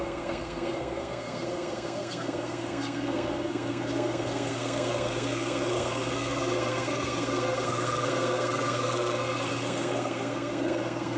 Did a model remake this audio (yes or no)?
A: yes